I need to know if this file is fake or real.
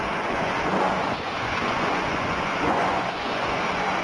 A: fake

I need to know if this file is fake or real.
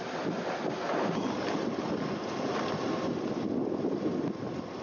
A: real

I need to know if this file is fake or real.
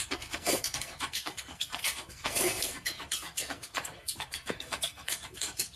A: fake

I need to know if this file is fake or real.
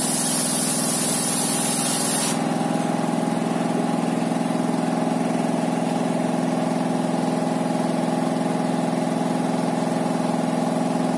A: real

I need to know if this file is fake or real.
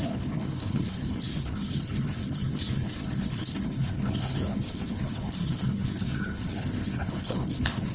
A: fake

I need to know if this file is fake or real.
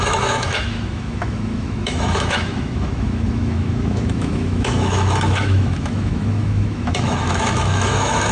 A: fake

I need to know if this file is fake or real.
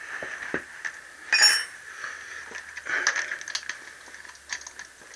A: real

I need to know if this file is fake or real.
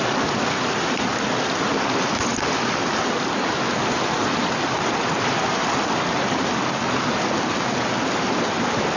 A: real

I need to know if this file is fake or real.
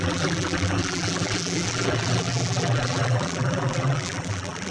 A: fake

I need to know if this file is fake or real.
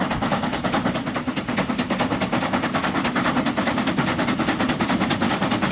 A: real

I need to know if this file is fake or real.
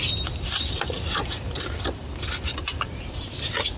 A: fake